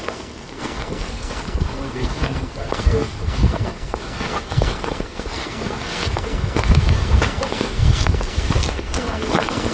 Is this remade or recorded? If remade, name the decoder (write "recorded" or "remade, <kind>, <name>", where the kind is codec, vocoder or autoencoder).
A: remade, codec, SNAC